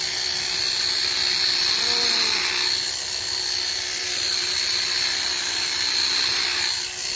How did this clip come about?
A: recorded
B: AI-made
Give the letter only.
A